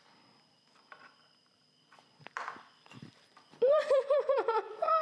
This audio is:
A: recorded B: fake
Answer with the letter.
B